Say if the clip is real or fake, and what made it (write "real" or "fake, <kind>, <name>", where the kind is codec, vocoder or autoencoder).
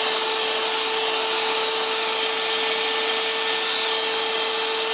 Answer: real